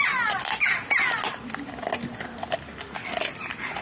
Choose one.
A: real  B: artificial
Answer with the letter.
A